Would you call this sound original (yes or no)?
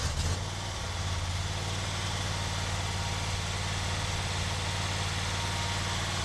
yes